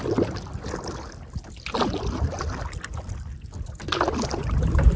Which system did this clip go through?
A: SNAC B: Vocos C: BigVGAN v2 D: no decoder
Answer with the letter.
D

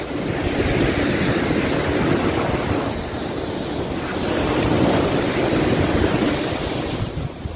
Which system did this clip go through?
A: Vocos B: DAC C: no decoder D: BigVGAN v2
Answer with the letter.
C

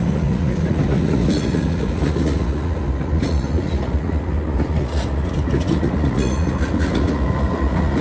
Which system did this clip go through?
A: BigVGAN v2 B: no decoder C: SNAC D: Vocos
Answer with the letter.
D